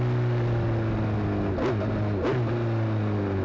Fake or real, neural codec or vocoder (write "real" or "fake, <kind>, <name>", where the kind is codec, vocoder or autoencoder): real